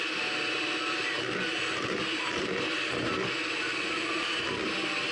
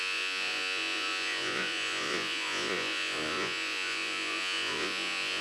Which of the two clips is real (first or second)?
first